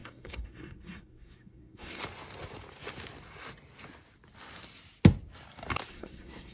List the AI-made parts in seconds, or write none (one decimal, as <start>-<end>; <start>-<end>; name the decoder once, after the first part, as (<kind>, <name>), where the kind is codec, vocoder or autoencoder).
0.0-2.0 (codec, SNAC); 5.9-6.5